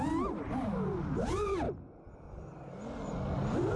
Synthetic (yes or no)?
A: no